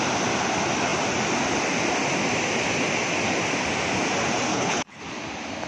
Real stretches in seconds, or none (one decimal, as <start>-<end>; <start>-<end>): 0.0-4.5; 5.0-5.7